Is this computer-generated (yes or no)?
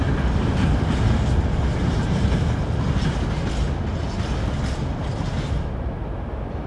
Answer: no